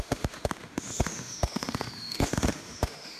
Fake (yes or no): yes